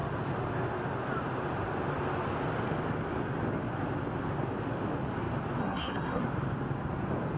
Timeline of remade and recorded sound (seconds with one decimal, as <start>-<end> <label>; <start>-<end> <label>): 0.0-5.6 recorded; 5.6-6.2 remade; 6.2-7.4 recorded